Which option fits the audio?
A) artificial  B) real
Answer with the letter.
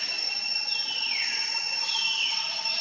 B